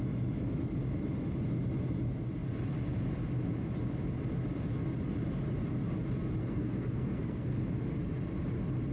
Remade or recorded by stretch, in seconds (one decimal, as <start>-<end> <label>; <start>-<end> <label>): 0.0-6.4 recorded; 6.4-7.6 remade; 7.6-8.9 recorded